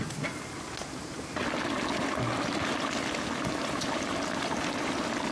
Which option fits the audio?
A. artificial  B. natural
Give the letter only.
B